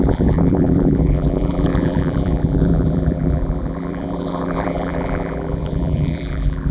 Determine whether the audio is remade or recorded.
remade